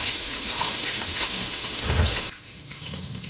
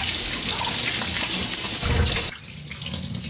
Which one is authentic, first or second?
second